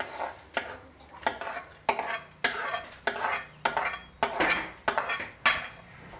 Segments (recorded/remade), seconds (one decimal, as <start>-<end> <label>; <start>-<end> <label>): 0.0-6.2 recorded

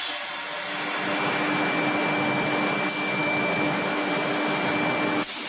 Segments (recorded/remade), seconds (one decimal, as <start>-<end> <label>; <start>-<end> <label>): 0.0-3.2 recorded; 3.2-4.1 remade; 4.1-5.5 recorded

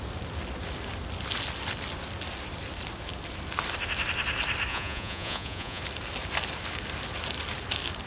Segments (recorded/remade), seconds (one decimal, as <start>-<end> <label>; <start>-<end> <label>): 0.0-4.7 recorded; 4.7-5.8 remade; 5.8-8.1 recorded

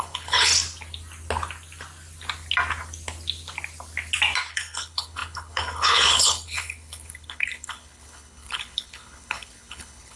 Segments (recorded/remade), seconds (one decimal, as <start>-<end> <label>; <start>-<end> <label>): 0.0-0.5 remade; 0.5-4.5 recorded; 4.5-10.2 remade

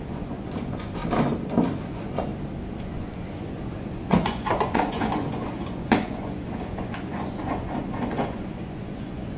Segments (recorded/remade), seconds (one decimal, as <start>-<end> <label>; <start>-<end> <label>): 0.0-1.0 remade; 1.0-1.8 recorded; 1.8-2.3 remade; 2.3-2.8 recorded; 2.8-9.4 remade

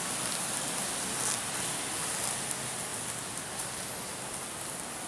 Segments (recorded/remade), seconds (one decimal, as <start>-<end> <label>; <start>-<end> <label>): 0.0-5.1 recorded

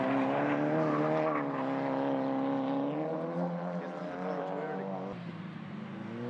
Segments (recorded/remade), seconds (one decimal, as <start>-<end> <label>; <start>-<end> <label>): 0.0-6.3 recorded